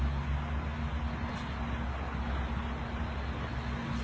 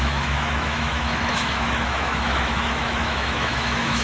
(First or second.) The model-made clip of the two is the second